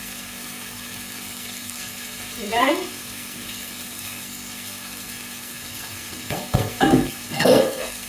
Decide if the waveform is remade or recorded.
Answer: remade